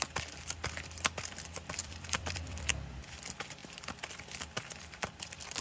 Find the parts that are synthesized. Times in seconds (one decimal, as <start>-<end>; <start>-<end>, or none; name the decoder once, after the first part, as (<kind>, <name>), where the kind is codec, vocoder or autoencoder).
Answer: 1.8-2.7 (vocoder, BigVGAN v2); 3.6-5.6